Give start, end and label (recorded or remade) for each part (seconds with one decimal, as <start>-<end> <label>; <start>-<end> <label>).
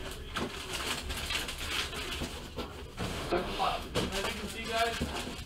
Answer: 0.0-3.1 recorded; 3.1-4.1 remade; 4.1-5.5 recorded